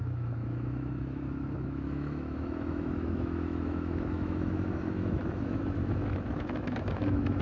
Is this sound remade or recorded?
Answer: remade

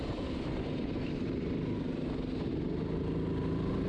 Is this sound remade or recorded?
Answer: recorded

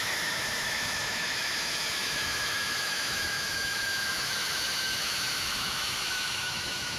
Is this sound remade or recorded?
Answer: remade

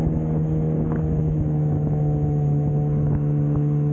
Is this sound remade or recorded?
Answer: remade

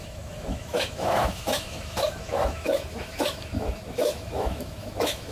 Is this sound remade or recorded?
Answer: remade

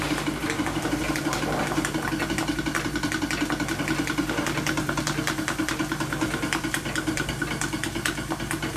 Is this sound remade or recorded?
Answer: recorded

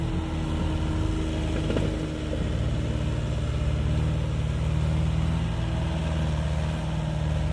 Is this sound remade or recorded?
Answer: recorded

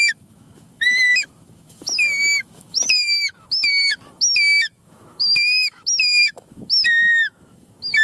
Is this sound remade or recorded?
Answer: remade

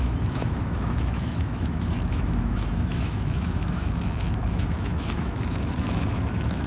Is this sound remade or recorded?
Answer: remade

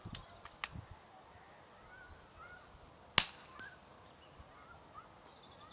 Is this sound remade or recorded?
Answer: recorded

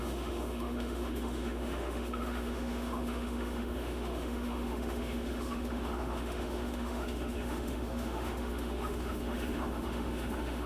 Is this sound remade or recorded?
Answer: remade